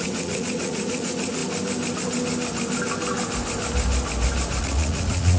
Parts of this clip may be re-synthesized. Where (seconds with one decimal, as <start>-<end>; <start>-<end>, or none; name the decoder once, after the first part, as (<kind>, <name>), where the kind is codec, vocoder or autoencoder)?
0.0-1.4 (vocoder, Vocos); 4.6-5.4